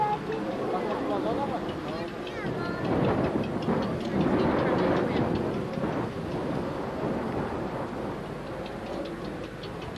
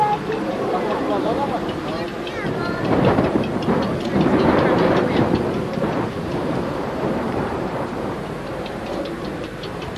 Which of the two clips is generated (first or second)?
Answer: second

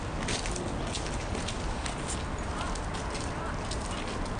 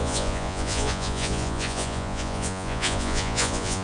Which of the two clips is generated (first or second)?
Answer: second